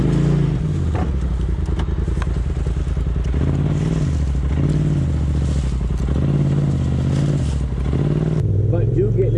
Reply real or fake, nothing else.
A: real